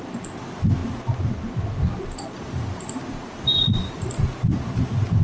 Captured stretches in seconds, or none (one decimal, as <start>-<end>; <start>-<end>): 0.0-5.2

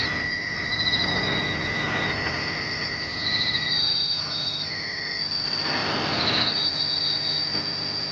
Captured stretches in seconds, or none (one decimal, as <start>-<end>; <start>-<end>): 0.0-3.1; 5.0-8.1

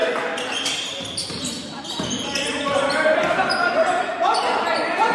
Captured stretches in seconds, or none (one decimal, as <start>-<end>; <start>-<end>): 0.0-3.1; 4.1-4.6

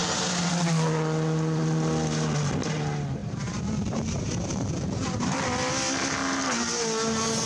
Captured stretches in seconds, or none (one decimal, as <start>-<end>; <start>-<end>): 0.5-3.2; 5.7-7.5

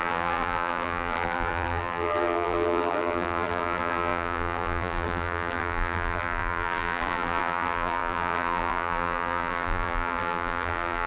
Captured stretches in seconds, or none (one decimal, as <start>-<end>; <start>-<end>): none

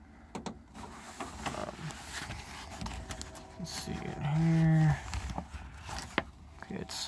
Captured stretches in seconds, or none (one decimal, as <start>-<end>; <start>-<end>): 0.0-7.1

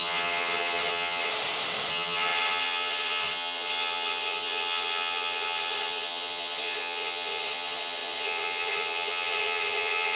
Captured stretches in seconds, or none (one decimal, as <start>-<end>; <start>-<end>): 1.3-1.9

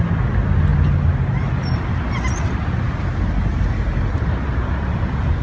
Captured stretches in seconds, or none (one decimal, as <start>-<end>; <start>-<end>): 0.0-5.4